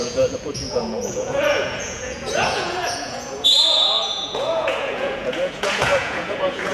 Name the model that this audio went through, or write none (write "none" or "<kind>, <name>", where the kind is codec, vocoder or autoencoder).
vocoder, Vocos